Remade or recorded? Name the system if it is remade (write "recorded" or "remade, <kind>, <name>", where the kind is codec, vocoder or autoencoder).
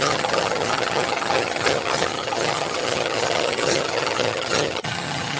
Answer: remade, vocoder, HiFi-GAN